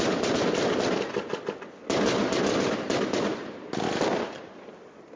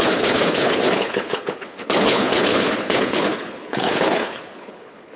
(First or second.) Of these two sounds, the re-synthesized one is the second